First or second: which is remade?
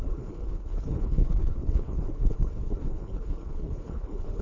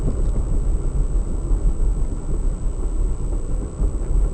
first